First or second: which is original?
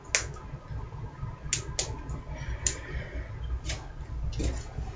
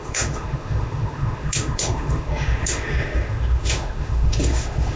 first